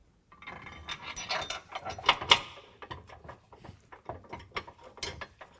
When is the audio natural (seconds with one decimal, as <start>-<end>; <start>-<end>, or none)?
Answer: 0.0-5.6